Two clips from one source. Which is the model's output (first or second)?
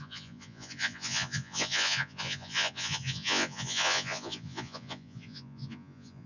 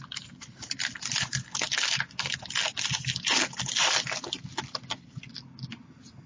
first